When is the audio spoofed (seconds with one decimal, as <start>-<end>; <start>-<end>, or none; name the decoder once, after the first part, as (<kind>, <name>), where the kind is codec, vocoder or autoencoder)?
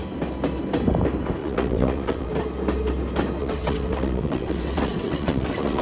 1.4-2.3 (vocoder, WaveNeXt); 3.4-5.8